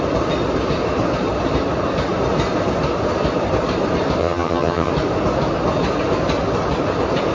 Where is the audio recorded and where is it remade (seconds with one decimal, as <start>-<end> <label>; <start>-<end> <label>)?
0.0-4.2 recorded; 4.2-4.9 remade; 4.9-7.3 recorded